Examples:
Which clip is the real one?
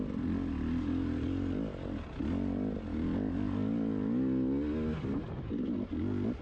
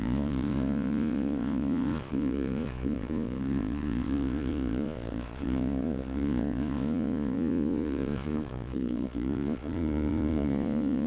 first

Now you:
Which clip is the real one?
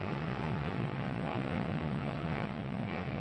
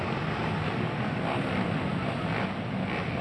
second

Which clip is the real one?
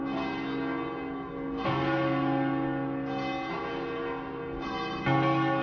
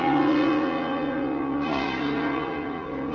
first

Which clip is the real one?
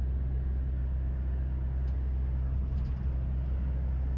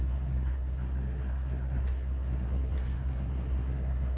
first